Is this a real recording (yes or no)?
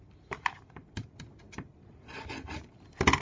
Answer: yes